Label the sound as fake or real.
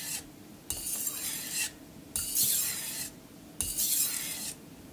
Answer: real